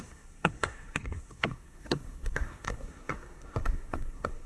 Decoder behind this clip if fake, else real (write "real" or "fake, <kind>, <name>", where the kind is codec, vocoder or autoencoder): fake, codec, SNAC